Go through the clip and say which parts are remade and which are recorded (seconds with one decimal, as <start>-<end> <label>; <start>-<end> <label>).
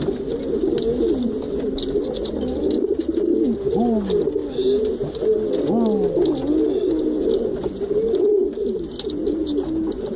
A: 0.0-10.2 recorded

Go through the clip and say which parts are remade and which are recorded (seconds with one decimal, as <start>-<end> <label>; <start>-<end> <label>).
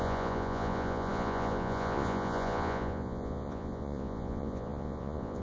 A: 0.0-5.4 remade